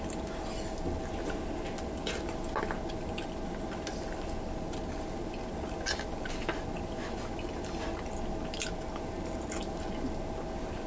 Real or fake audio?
real